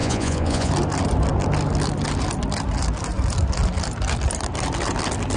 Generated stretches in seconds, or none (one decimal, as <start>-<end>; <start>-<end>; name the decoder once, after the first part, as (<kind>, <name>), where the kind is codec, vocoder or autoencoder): 0.0-0.7 (vocoder, Vocos)